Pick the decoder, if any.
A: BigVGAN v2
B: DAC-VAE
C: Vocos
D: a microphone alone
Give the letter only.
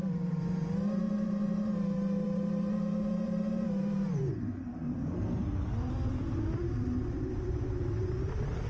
A